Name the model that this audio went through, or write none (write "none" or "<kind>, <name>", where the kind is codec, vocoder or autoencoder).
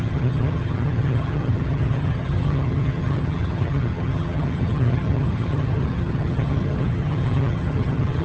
vocoder, HiFi-GAN